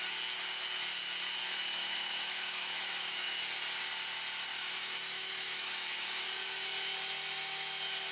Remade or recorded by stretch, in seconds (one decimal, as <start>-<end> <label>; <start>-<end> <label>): 0.0-1.4 recorded; 1.4-3.4 remade; 3.4-4.5 recorded; 4.5-6.2 remade; 6.2-8.1 recorded